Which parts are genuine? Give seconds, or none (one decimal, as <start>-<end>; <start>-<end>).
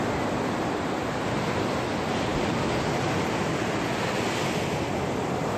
0.0-5.6